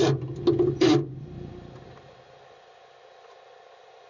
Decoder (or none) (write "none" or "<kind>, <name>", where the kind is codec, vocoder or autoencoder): none